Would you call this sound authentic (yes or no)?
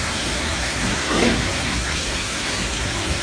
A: no